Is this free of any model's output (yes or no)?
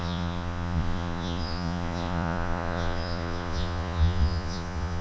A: no